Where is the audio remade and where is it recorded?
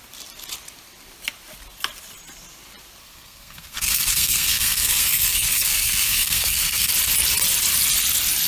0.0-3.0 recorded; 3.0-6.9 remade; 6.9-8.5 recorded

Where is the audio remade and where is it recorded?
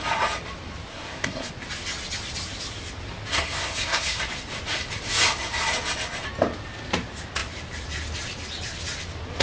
0.0-0.9 recorded; 0.9-1.5 remade; 1.5-3.3 recorded; 3.3-4.2 remade; 4.2-9.4 recorded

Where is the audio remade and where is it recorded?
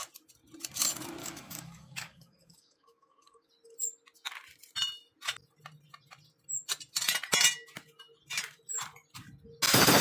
0.0-1.2 recorded; 1.2-3.5 remade; 3.5-10.0 recorded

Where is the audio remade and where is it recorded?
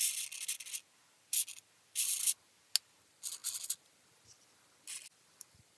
0.0-5.8 recorded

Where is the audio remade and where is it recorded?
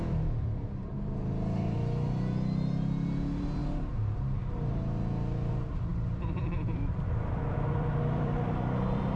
0.0-5.9 recorded; 5.9-9.2 remade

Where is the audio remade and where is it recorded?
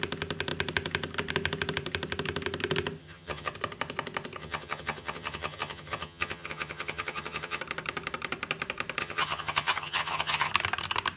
0.0-3.0 recorded; 3.0-3.5 remade; 3.5-4.4 recorded; 4.4-7.6 remade; 7.6-9.0 recorded; 9.0-10.5 remade; 10.5-11.2 recorded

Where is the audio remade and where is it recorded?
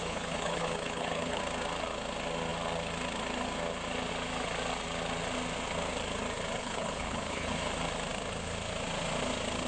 0.0-1.4 remade; 1.4-6.6 recorded; 6.6-7.5 remade; 7.5-9.7 recorded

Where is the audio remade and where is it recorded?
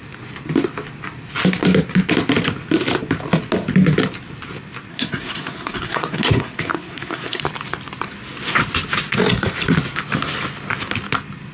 0.0-4.9 recorded; 4.9-7.4 remade; 7.4-11.5 recorded